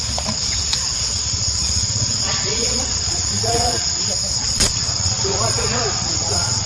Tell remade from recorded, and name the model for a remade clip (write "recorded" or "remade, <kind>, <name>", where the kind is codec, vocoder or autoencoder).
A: remade, vocoder, Vocos